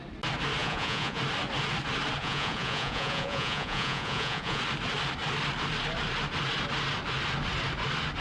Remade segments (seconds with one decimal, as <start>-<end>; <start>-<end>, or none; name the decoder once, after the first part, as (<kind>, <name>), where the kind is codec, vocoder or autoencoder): 0.6-1.2 (vocoder, Vocos); 2.2-4.6